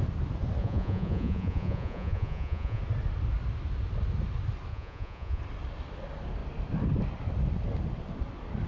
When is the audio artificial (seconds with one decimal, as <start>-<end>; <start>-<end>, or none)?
0.6-2.8; 4.7-5.4